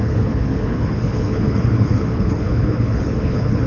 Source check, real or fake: fake